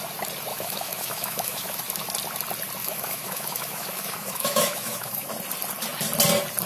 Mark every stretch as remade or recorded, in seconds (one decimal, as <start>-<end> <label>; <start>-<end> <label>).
0.0-0.5 recorded; 0.5-1.8 remade; 1.8-2.8 recorded; 2.8-5.3 remade; 5.3-6.7 recorded